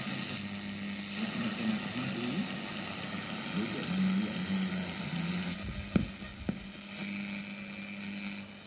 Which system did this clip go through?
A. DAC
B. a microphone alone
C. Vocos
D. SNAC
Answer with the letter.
B